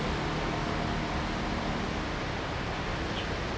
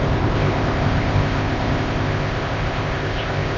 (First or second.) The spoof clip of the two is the second